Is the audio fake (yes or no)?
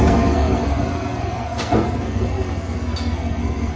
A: yes